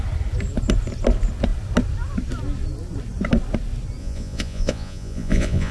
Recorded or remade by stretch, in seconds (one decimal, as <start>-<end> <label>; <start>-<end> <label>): 0.0-4.0 recorded; 4.0-5.7 remade